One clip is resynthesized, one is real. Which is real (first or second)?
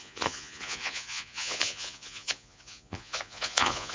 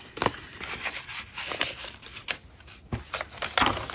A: second